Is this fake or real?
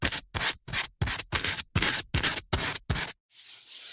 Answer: real